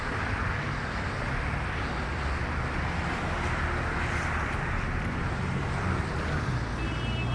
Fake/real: real